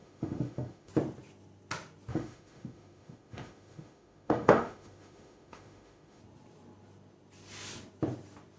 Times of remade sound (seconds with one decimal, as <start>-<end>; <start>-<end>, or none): 0.0-0.9; 2.1-6.2